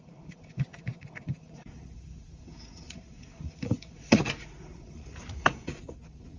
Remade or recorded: remade